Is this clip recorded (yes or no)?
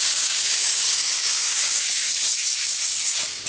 no